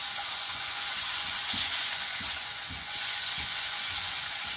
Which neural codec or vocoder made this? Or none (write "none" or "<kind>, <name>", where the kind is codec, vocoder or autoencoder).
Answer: vocoder, Vocos